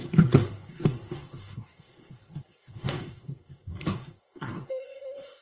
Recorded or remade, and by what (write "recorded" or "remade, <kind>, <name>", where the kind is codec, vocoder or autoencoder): remade, codec, SNAC